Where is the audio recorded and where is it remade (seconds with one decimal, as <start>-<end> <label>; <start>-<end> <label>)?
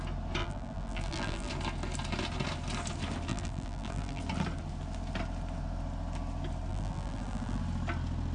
0.0-0.4 recorded; 0.4-1.5 remade; 1.5-3.3 recorded; 3.3-4.2 remade; 4.2-6.7 recorded; 6.7-7.6 remade; 7.6-8.3 recorded